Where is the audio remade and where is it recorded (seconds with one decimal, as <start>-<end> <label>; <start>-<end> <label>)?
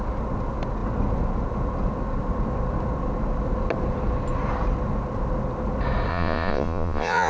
0.0-6.1 recorded; 6.1-7.3 remade